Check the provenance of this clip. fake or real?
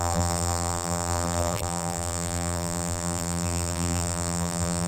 fake